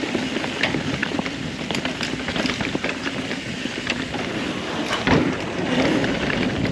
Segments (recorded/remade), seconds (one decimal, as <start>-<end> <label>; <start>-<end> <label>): 0.0-1.0 recorded; 1.0-5.0 remade; 5.0-6.7 recorded